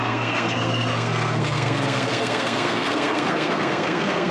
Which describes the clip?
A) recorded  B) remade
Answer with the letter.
B